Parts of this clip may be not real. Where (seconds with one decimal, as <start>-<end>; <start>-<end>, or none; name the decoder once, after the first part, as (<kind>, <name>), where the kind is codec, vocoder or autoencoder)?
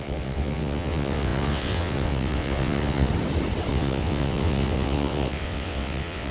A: 0.0-3.1 (vocoder, WaveNeXt); 3.7-6.3